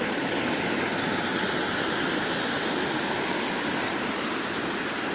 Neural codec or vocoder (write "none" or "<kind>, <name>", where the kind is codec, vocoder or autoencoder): none